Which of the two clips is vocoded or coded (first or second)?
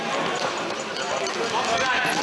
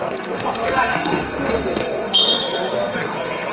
second